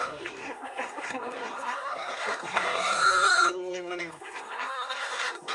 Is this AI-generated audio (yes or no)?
yes